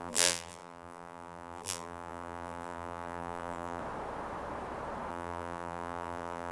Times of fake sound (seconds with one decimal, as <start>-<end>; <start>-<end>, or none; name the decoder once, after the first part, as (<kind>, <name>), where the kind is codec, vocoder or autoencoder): 0.0-3.8 (vocoder, BigVGAN v2); 5.1-6.5